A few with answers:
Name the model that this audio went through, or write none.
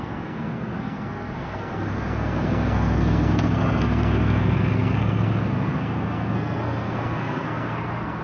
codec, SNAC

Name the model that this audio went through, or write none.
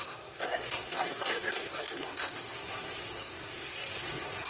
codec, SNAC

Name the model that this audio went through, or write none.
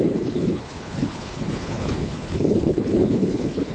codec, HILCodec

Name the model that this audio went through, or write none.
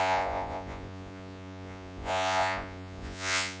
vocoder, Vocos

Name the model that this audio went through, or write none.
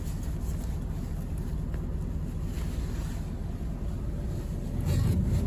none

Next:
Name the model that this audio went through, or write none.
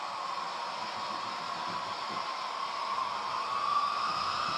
none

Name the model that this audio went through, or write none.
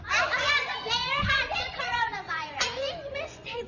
vocoder, Vocos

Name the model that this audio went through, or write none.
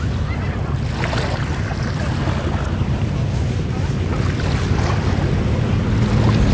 none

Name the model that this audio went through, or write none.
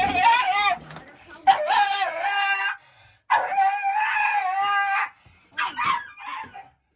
none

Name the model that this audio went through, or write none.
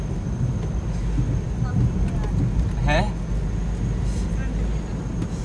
none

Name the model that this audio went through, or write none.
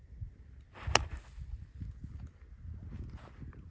none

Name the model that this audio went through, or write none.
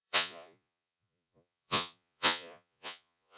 vocoder, Vocos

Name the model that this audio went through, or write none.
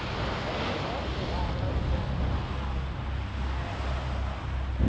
none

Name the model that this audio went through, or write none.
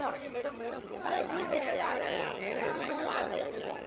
vocoder, HiFi-GAN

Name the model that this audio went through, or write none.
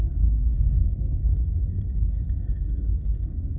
codec, SNAC